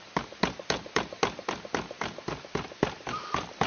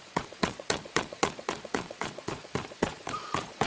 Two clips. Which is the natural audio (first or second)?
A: first